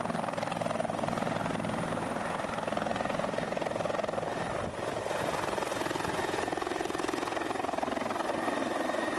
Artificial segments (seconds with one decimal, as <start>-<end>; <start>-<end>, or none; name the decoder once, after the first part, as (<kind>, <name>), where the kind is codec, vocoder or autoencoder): 6.2-7.6 (vocoder, Vocos)

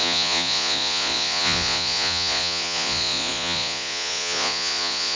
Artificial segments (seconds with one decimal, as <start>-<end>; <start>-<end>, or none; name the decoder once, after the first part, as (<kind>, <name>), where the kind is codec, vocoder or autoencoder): 0.0-5.2 (vocoder, Vocos)